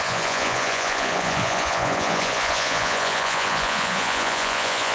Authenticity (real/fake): fake